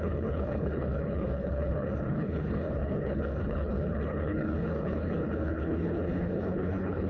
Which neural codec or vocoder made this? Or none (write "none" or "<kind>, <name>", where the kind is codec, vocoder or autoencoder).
codec, HILCodec